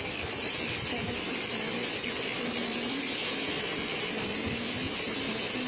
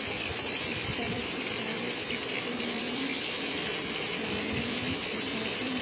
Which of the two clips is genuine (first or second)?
first